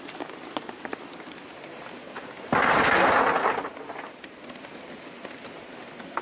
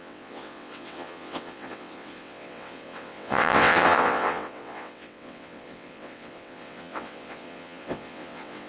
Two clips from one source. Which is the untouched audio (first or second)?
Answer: first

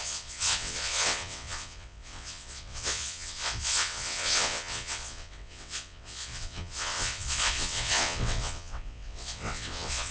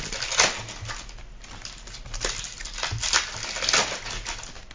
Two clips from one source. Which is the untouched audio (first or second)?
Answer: second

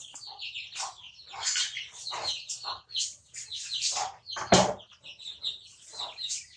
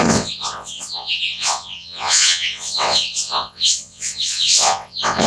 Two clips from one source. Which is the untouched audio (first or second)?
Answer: first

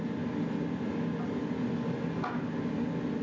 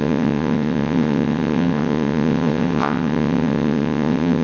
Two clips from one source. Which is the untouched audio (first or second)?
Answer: first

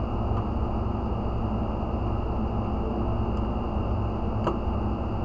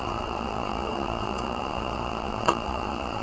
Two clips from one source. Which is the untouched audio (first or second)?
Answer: first